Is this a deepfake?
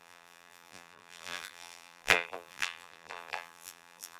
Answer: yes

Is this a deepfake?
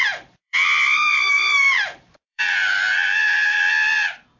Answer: yes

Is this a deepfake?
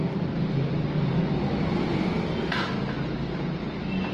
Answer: no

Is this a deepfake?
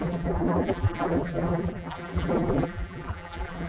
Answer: yes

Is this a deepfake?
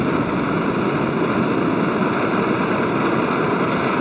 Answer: no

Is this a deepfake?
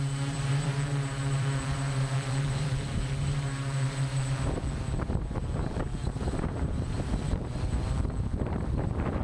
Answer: yes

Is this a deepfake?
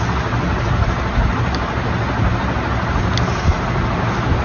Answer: no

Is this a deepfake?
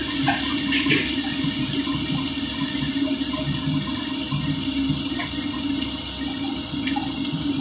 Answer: no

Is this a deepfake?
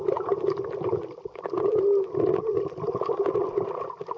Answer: no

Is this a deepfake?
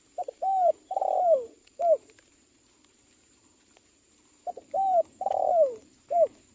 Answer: yes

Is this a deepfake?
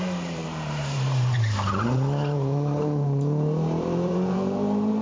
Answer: yes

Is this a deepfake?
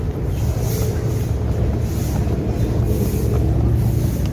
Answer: no